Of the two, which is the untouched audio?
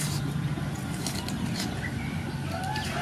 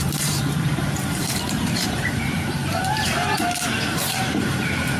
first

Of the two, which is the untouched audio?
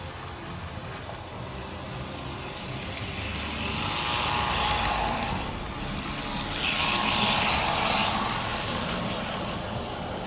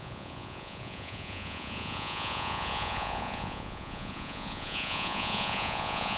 first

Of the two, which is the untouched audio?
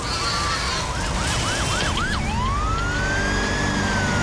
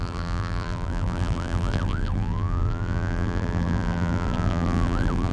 first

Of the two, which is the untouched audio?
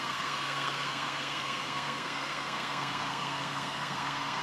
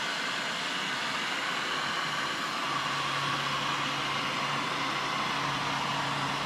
second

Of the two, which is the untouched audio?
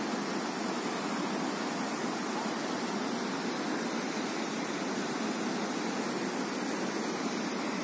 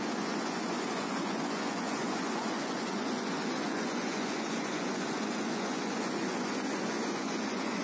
first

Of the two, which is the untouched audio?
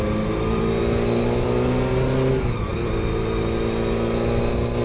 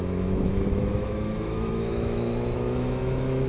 first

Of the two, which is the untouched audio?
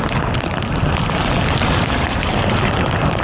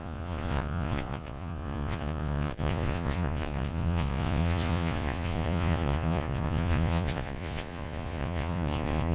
first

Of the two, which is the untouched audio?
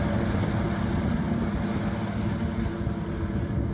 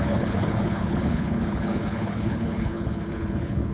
first